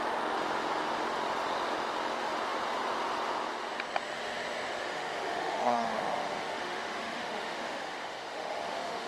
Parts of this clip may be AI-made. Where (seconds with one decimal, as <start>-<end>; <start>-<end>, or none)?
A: 4.8-9.1